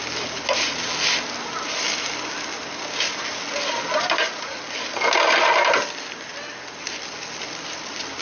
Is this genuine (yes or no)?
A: yes